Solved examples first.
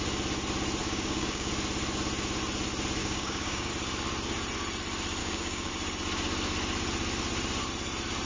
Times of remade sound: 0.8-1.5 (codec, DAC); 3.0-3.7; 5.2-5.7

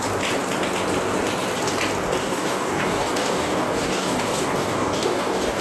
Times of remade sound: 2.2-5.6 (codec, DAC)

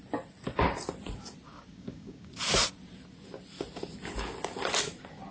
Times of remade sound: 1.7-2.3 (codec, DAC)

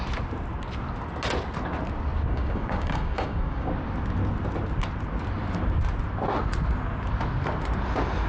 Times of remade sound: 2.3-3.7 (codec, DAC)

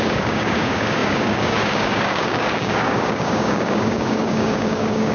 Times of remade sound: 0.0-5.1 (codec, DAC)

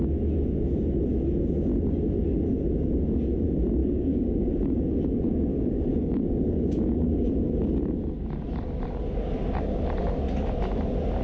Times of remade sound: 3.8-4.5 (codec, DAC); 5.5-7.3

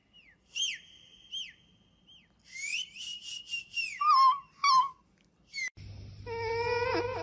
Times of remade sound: none